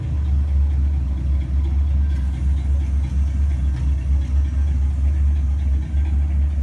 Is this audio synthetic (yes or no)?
no